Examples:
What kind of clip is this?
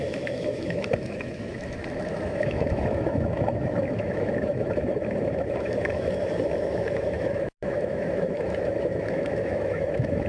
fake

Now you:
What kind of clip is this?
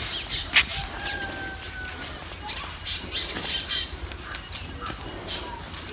real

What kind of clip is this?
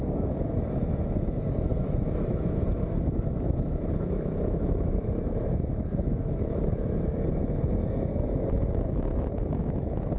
fake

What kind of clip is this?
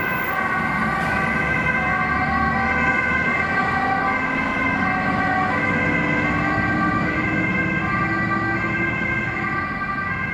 real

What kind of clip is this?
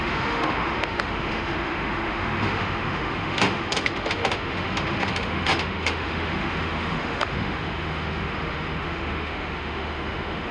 fake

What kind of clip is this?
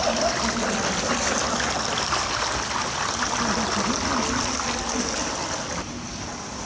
real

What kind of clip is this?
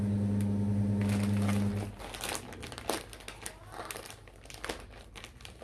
real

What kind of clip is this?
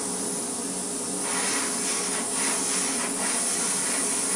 real